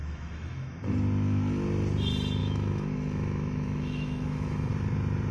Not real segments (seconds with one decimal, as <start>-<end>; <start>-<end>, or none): 0.0-0.9; 2.4-4.7